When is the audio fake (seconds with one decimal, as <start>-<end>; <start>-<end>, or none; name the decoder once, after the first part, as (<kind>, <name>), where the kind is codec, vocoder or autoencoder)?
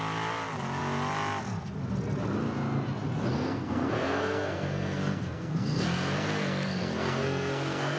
3.3-8.0 (codec, SNAC)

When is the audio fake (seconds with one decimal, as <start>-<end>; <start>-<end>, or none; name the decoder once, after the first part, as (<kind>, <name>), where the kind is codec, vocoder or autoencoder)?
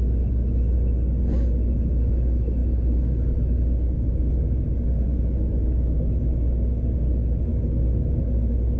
5.1-6.1 (autoencoder, DAC-VAE); 7.5-8.2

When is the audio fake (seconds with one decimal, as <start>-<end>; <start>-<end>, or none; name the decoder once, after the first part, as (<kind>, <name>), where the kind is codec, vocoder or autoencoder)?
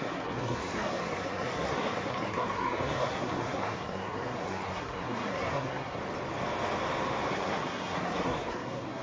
0.0-6.0 (codec, SNAC); 7.3-9.0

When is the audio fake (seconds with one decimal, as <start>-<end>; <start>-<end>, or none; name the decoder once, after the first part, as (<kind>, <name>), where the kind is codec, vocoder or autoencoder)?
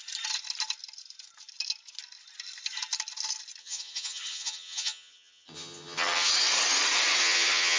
3.6-6.3 (vocoder, HiFi-GAN); 7.2-7.8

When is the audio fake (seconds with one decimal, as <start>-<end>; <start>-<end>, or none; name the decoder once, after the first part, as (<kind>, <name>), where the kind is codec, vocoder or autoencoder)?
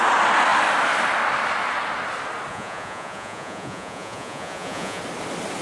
2.5-5.0 (vocoder, Vocos)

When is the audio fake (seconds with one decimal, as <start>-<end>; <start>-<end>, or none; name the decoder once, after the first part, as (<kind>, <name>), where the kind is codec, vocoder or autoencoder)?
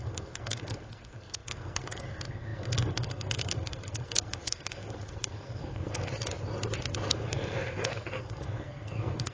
0.0-6.1 (codec, SNAC); 7.1-9.3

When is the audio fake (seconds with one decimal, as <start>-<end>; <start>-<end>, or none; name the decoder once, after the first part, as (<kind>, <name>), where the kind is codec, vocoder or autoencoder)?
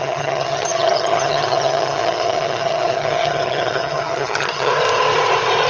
0.0-4.7 (vocoder, HiFi-GAN)